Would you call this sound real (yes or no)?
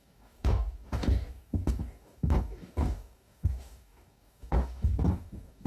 no